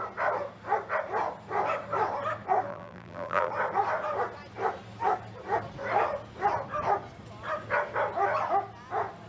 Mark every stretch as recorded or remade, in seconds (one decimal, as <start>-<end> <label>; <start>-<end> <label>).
0.0-2.7 recorded; 2.7-3.5 remade; 3.5-9.3 recorded